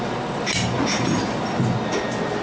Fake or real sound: real